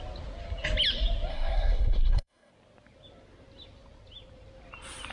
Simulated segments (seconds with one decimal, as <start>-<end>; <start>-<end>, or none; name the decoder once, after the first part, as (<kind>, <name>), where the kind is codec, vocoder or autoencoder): 1.3-2.5 (codec, SNAC)